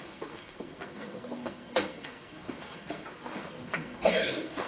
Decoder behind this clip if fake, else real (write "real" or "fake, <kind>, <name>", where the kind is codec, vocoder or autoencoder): fake, codec, SNAC